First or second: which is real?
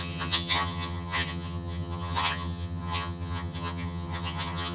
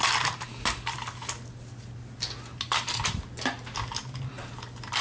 second